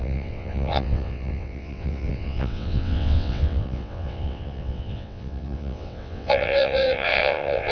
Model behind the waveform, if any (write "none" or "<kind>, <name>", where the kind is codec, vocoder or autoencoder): vocoder, WaveNeXt